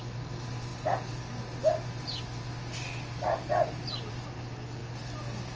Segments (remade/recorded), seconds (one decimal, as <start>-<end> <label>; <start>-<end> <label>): 0.0-5.6 recorded